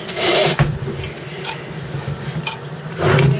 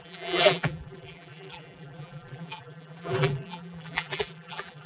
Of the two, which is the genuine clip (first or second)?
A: first